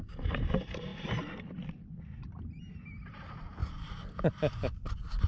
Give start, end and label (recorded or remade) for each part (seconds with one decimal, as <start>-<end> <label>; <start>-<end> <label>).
0.0-5.3 recorded